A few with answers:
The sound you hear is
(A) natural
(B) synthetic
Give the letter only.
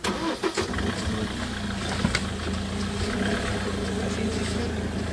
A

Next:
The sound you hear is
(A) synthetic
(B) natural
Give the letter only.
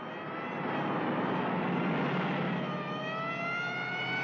B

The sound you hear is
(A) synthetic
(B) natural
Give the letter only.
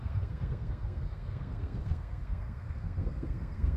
A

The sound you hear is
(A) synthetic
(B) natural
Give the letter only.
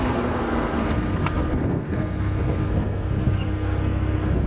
A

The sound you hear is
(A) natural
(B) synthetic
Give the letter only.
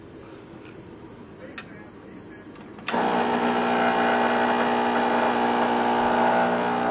A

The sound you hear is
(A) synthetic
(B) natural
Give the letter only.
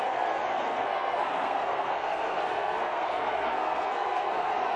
A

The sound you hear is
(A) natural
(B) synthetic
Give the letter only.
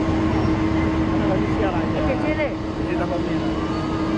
A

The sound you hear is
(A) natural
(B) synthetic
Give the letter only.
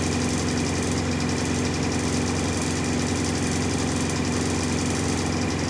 A